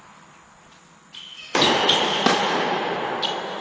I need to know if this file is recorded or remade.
recorded